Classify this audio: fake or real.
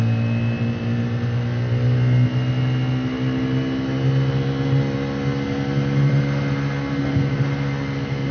real